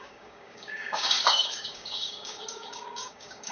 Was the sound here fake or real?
fake